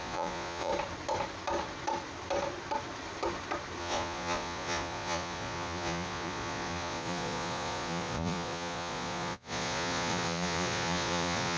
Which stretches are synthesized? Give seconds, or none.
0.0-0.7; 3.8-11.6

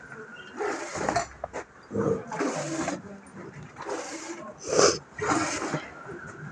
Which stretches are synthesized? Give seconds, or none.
none

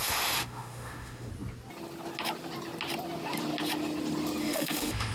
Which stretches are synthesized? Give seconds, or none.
0.0-1.3; 4.4-5.1